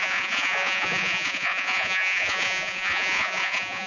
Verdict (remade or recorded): remade